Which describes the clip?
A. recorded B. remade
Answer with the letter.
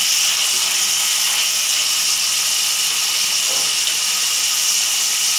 A